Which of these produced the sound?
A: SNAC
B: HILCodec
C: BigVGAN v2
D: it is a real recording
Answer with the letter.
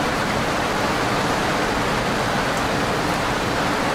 D